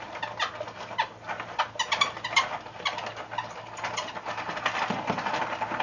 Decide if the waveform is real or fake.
real